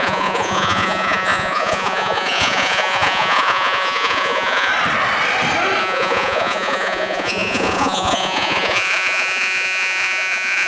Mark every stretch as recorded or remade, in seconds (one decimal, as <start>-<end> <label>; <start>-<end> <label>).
0.0-4.7 remade; 4.7-5.8 recorded; 5.8-10.7 remade